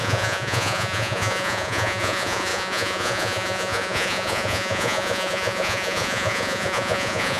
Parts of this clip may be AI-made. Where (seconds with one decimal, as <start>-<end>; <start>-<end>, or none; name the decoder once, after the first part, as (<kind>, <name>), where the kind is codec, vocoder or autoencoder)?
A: 0.0-7.4 (vocoder, Vocos)